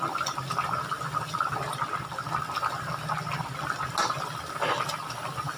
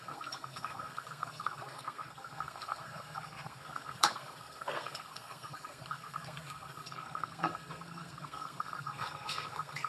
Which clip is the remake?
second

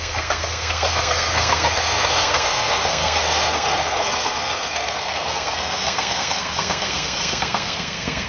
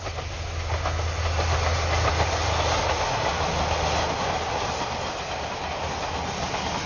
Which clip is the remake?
first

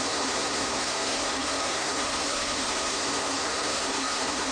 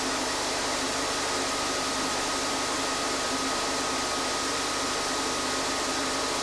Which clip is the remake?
first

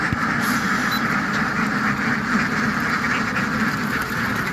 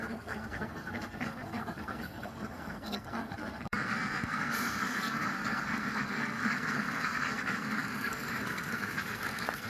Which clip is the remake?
second